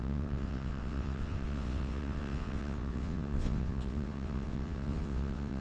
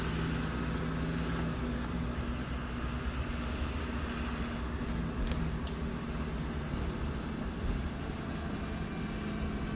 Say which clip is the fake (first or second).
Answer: first